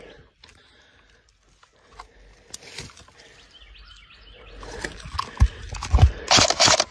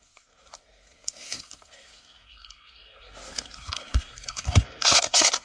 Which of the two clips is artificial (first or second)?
second